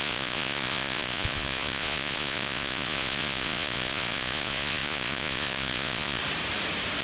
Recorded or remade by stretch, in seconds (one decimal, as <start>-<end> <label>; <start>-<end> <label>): 0.0-6.2 remade; 6.2-7.0 recorded